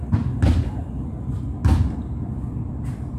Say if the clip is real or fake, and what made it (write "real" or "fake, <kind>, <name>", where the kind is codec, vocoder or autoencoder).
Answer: real